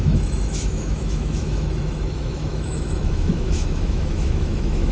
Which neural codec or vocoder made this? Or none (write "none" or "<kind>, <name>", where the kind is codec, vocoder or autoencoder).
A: autoencoder, DAC-VAE